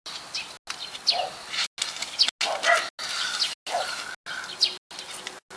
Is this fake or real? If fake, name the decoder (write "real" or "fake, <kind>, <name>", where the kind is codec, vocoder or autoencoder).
real